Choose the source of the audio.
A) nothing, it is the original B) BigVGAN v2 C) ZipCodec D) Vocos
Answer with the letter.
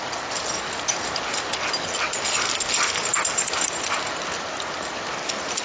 A